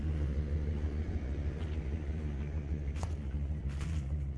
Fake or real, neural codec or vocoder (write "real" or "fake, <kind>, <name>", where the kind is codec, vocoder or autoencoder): fake, vocoder, Vocos